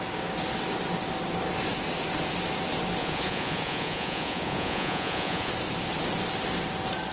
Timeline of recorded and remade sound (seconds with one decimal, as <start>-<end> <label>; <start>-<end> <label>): 0.0-3.0 recorded; 3.0-5.5 remade; 5.5-7.1 recorded